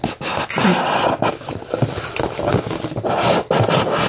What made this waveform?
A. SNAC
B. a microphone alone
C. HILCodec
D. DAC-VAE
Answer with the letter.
B